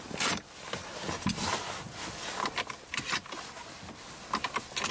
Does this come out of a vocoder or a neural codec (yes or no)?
no